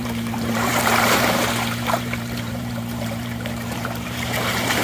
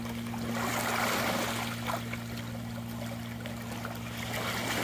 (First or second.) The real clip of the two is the second